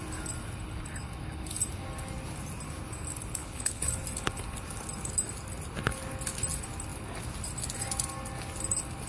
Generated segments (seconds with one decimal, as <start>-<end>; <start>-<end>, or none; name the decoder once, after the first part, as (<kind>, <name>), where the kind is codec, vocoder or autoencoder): 3.4-3.9 (codec, HILCodec)